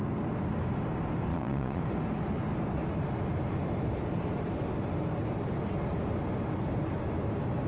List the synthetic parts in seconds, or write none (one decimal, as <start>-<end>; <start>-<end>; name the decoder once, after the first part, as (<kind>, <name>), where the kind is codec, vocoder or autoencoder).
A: 1.3-1.8 (vocoder, Vocos)